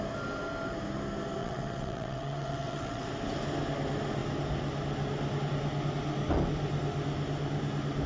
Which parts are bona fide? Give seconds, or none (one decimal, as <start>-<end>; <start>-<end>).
0.0-1.4; 3.1-8.1